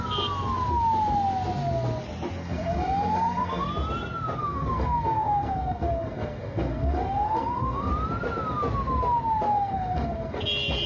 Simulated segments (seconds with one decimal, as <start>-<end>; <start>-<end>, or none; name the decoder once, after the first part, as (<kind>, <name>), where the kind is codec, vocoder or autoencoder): 2.4-3.7 (codec, SNAC); 4.4-7.9; 9.5-10.4

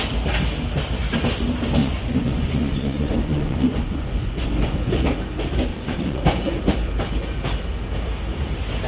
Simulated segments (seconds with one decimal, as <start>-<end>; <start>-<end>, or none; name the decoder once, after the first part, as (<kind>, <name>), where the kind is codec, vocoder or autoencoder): 1.8-4.8 (vocoder, Vocos); 5.7-6.6

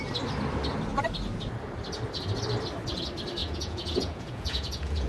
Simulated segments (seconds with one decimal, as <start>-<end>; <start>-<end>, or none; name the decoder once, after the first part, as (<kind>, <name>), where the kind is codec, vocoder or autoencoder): 3.4-5.1 (vocoder, Vocos)

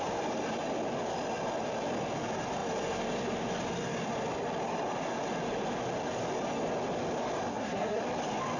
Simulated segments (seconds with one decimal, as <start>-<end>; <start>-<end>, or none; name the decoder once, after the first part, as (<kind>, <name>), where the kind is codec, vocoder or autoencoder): 7.5-8.0 (codec, SNAC)

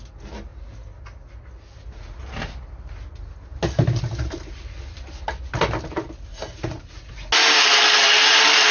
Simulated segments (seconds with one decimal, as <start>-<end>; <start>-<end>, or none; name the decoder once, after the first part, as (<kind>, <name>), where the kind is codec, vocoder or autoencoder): 6.3-7.1 (vocoder, Vocos)

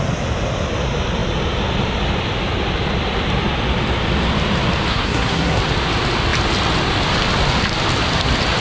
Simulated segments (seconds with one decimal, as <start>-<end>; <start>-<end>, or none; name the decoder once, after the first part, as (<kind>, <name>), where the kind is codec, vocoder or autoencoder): 4.9-5.6 (codec, SNAC)